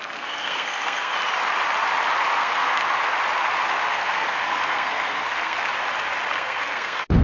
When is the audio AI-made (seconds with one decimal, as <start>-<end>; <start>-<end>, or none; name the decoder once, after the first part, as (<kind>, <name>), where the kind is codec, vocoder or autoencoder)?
0.0-1.1 (codec, SNAC); 2.4-2.8; 3.9-5.7; 6.3-7.2